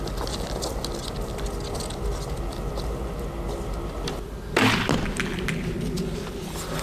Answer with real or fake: real